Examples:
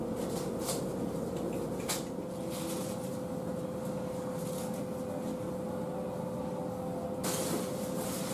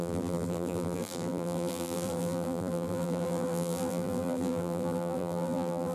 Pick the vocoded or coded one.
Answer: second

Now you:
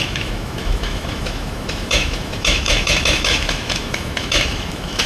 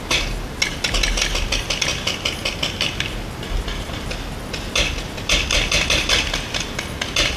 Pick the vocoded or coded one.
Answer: first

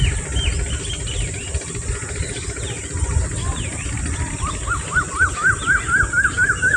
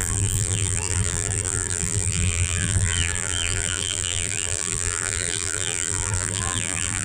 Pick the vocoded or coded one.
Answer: second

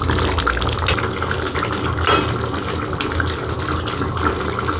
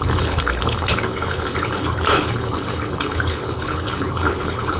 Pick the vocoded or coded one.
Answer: second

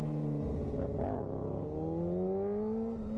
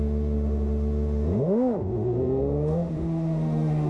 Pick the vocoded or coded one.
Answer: second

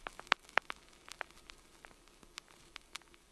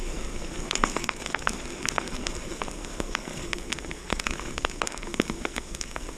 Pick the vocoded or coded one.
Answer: second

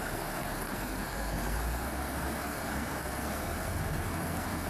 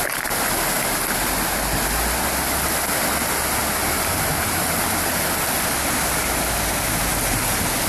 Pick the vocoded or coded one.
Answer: first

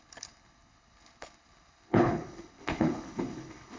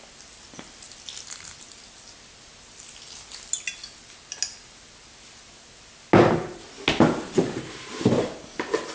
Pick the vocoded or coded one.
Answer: first